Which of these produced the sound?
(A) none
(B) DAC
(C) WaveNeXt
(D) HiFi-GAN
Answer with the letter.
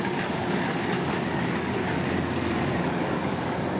B